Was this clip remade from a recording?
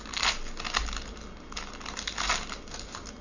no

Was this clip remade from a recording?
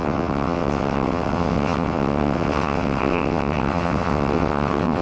yes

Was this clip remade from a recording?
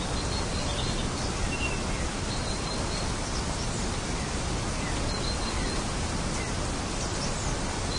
no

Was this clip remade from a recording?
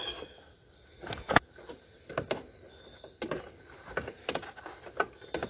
no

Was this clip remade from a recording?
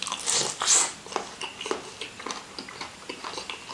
no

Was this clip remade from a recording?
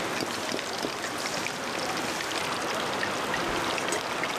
no